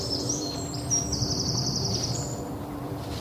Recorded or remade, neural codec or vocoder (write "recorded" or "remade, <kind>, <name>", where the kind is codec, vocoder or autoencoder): remade, vocoder, BigVGAN v2